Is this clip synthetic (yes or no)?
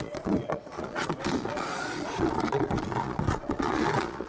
yes